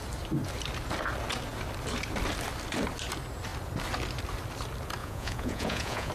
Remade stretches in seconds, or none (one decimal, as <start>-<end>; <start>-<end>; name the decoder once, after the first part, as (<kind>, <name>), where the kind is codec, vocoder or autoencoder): 5.0-6.1 (vocoder, Vocos)